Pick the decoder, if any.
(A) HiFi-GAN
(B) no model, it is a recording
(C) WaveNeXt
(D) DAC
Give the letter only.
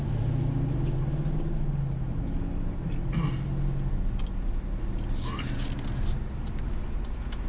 B